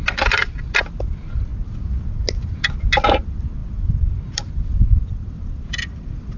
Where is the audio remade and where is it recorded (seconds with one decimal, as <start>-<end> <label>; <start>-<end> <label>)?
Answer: 0.0-6.4 remade